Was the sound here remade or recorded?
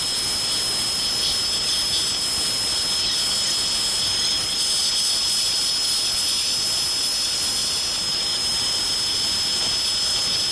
recorded